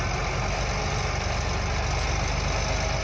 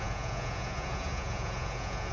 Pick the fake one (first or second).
second